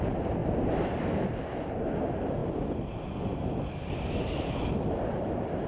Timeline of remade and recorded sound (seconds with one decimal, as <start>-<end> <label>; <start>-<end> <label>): 0.0-0.4 recorded; 0.4-1.8 remade; 1.8-2.4 recorded; 2.4-2.9 remade; 2.9-5.7 recorded